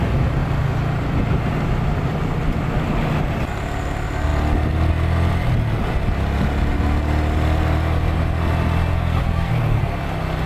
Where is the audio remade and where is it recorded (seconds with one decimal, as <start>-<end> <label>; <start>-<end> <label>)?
0.0-8.9 recorded; 8.9-10.0 remade; 10.0-10.5 recorded

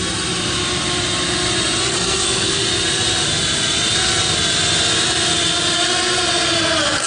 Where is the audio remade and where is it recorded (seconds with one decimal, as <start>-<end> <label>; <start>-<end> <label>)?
0.0-1.9 recorded; 1.9-2.6 remade; 2.6-7.1 recorded

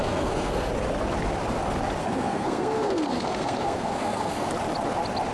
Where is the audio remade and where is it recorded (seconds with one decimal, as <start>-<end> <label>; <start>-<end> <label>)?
0.0-0.7 remade; 0.7-2.0 recorded; 2.0-4.5 remade; 4.5-5.3 recorded